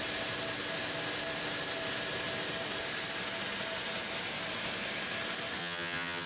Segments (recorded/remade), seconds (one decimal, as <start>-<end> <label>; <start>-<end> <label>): 0.0-5.6 recorded; 5.6-6.3 remade